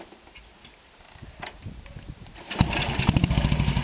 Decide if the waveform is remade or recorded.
recorded